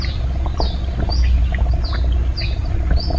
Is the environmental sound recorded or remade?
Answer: recorded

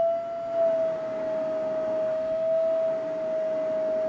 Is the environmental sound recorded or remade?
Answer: recorded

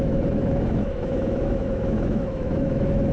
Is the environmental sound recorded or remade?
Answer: remade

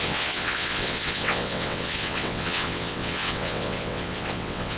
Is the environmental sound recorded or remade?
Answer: remade